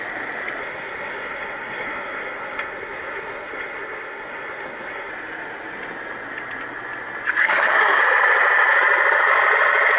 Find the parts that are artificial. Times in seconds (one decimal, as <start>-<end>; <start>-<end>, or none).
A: 0.6-5.1; 7.4-8.0